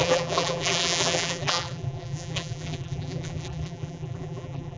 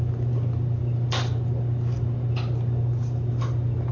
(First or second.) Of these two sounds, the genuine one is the second